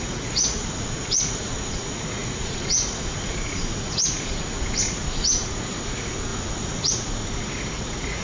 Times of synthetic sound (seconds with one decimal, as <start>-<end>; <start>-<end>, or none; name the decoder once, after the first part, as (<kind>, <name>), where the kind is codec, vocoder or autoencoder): 0.0-8.2 (vocoder, Vocos)